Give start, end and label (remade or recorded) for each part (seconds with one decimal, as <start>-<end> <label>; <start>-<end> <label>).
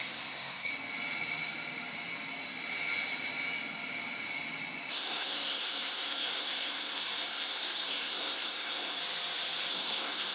0.0-0.7 remade; 0.7-4.9 recorded; 4.9-9.0 remade; 9.0-9.7 recorded; 9.7-10.3 remade